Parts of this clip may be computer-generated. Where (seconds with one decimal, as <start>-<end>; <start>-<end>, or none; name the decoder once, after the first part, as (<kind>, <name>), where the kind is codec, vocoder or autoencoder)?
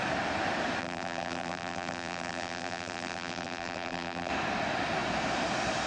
0.8-4.3 (vocoder, BigVGAN v2)